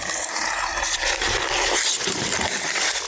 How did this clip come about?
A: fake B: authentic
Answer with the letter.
A